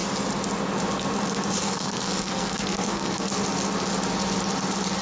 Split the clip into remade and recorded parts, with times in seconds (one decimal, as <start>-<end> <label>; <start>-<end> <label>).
0.0-1.6 recorded; 1.6-3.3 remade; 3.3-5.0 recorded